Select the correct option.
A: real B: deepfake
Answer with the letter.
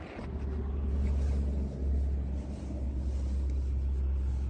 A